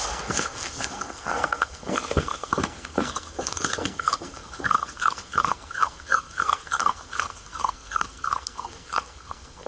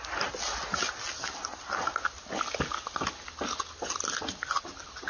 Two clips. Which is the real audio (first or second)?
second